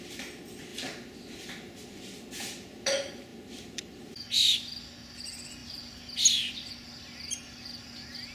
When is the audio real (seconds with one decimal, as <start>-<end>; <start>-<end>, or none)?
0.0-0.7; 2.0-3.3; 4.0-8.3